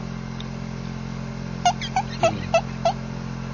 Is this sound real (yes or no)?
yes